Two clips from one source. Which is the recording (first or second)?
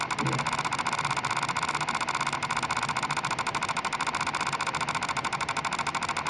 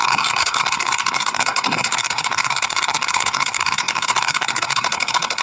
first